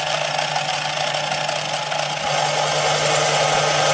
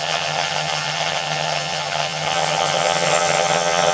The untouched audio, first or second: first